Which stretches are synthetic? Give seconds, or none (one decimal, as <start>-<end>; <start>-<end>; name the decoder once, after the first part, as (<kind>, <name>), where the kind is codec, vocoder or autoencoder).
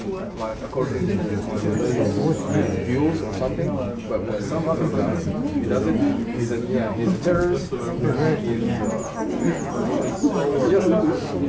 0.5-1.1 (vocoder, BigVGAN v2)